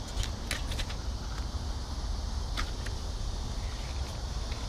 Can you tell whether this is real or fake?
real